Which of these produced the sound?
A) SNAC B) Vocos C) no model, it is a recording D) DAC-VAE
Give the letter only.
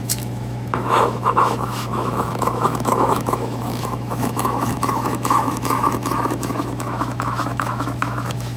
D